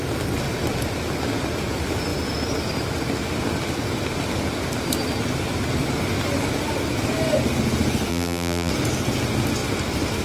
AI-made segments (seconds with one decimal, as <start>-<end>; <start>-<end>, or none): 8.1-8.7